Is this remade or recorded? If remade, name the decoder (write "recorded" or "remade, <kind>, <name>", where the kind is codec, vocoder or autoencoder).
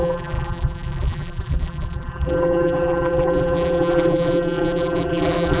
remade, vocoder, BigVGAN v2